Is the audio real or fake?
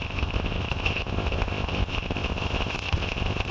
fake